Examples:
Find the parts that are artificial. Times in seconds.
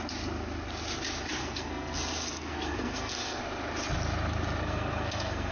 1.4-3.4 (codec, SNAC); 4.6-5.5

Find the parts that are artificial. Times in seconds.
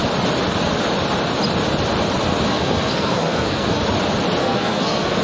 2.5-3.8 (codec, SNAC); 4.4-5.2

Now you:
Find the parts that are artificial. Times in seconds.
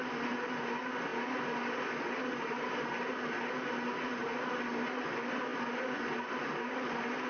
none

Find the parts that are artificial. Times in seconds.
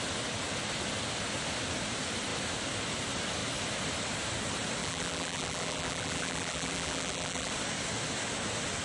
4.8-7.5 (vocoder, BigVGAN v2)